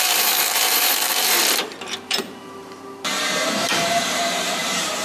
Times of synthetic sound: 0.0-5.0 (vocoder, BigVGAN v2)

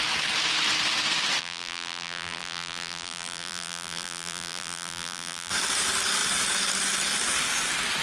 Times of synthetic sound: 1.4-5.5 (vocoder, BigVGAN v2)

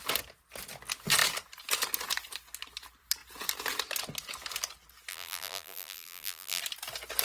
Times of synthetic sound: 5.1-6.6 (vocoder, BigVGAN v2)

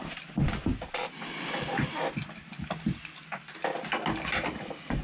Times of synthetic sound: none

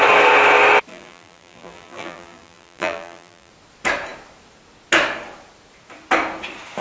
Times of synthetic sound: 0.9-3.5 (vocoder, BigVGAN v2)